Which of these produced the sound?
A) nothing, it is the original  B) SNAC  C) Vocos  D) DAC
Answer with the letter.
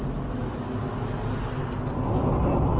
A